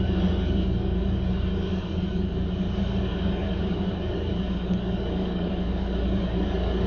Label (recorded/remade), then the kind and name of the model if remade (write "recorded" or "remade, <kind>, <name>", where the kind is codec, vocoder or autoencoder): remade, codec, DAC